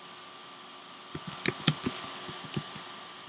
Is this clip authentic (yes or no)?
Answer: yes